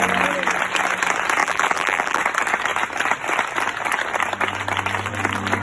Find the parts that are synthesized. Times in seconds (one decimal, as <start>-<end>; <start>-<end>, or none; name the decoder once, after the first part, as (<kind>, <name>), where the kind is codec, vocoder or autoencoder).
1.4-2.2 (vocoder, BigVGAN v2)